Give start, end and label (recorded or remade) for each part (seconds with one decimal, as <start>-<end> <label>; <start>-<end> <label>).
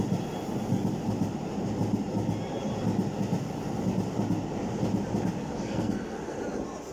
0.0-5.4 recorded; 5.4-6.4 remade; 6.4-6.9 recorded